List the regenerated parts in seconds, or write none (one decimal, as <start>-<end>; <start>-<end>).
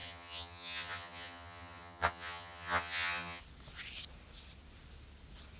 0.0-3.4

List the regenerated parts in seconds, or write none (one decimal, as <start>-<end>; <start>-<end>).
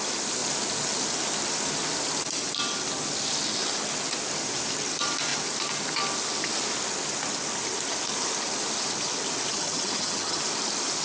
9.5-10.4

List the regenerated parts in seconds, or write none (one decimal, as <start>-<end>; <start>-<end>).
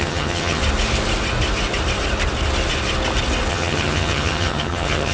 0.0-0.6; 3.5-5.1